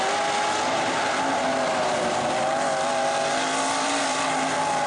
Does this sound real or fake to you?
real